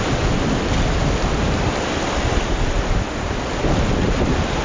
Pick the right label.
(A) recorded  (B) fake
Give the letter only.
A